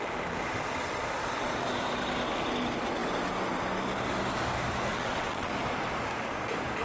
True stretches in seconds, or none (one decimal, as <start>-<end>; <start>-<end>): 0.0-4.9; 5.5-6.8